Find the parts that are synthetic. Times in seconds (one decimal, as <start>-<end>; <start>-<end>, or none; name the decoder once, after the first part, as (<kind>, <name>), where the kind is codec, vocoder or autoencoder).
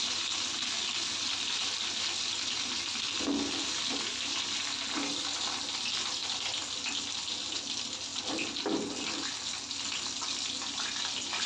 none